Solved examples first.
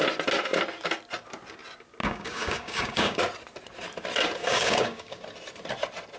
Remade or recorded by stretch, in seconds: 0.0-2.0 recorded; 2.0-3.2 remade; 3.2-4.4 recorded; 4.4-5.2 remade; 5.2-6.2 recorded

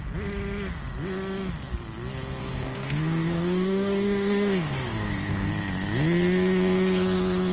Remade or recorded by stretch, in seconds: 0.0-2.4 recorded; 2.4-5.5 remade; 5.5-7.5 recorded

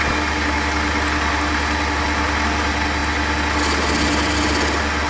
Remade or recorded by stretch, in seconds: 0.0-5.1 recorded

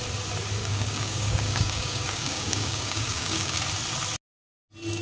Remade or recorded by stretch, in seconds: 0.0-0.6 recorded; 0.6-3.6 remade; 3.6-5.0 recorded

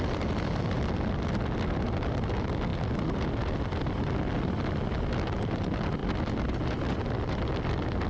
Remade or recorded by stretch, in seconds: 0.0-8.1 recorded